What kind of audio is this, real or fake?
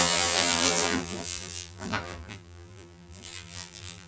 fake